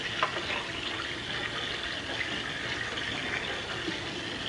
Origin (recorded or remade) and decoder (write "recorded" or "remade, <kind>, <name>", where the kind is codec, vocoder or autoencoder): recorded